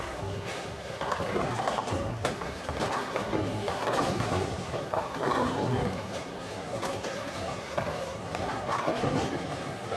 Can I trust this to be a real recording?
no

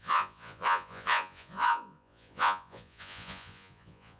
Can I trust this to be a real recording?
no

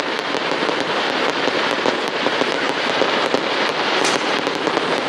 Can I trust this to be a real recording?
no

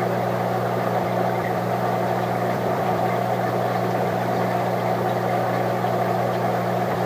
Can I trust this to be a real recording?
no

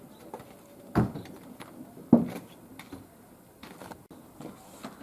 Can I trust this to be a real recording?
yes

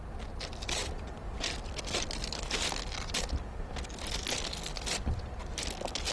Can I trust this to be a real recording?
yes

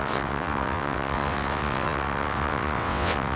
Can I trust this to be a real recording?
no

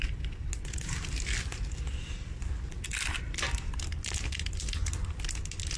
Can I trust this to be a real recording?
yes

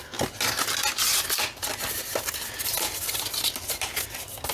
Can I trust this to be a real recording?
yes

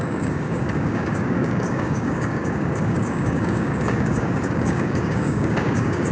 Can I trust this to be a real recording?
no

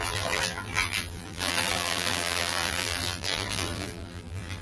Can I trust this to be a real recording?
no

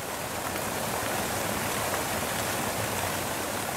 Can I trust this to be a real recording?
yes